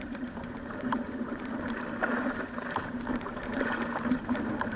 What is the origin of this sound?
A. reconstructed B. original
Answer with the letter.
A